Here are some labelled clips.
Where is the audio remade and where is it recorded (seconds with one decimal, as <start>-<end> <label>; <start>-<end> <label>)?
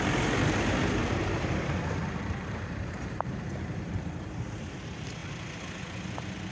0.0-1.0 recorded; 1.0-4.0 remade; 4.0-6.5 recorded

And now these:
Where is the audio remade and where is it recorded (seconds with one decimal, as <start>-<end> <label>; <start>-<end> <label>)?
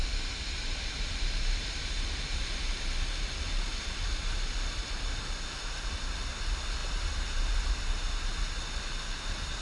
0.0-9.6 recorded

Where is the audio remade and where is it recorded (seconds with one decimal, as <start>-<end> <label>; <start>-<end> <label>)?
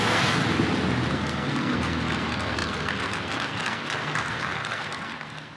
0.0-0.4 remade; 0.4-1.1 recorded; 1.1-5.6 remade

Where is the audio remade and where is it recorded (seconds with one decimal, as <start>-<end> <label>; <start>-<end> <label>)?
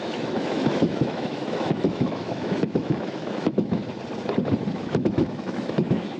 0.0-3.8 remade; 3.8-4.8 recorded; 4.8-6.2 remade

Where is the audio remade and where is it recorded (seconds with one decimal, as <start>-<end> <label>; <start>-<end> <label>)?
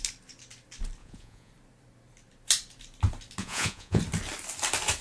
0.0-1.0 recorded; 1.0-1.5 remade; 1.5-3.4 recorded; 3.4-4.0 remade; 4.0-5.0 recorded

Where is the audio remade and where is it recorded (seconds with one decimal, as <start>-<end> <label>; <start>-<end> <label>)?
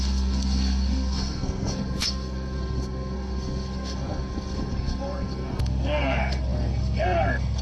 0.0-7.6 remade